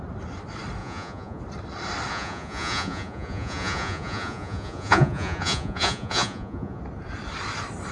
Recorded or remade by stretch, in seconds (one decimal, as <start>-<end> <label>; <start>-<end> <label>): 0.0-0.8 recorded; 0.8-1.4 remade; 1.4-2.1 recorded; 2.1-6.8 remade; 6.8-7.9 recorded